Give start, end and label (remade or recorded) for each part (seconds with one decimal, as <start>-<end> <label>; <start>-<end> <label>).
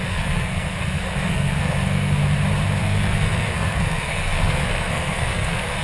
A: 0.0-2.2 remade; 2.2-2.8 recorded; 2.8-5.8 remade